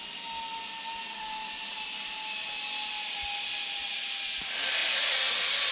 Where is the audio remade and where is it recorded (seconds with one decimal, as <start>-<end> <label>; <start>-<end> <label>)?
0.0-5.7 recorded